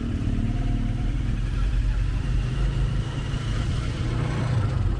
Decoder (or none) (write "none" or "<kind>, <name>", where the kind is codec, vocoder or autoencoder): vocoder, BigVGAN v2